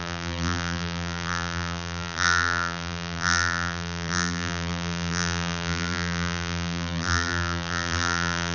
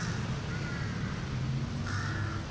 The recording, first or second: second